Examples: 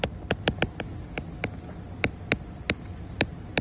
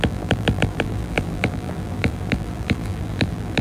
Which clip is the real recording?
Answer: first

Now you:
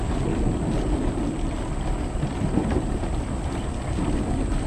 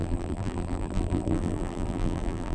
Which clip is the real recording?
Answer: first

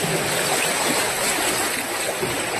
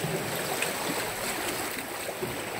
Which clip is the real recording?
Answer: second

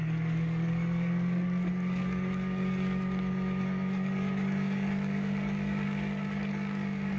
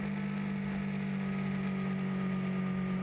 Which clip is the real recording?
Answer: second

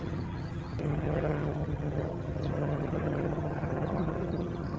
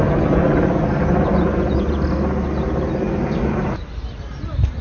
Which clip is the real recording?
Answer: second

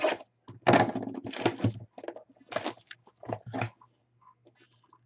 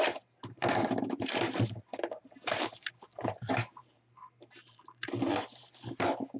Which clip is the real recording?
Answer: first